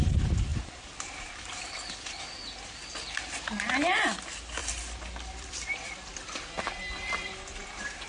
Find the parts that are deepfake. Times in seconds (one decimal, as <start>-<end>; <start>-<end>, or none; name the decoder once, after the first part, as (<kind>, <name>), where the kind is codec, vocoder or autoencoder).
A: 4.6-8.1 (vocoder, BigVGAN v2)